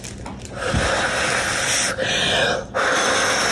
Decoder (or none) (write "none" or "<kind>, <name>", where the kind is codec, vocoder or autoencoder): none